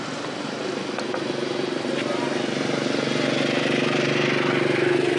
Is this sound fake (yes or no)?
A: no